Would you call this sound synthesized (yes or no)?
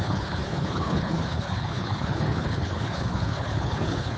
yes